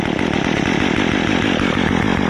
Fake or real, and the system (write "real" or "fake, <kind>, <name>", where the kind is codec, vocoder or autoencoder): real